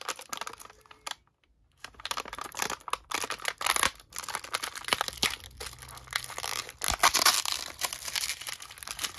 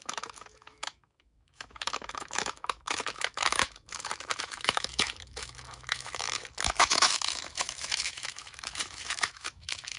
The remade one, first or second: second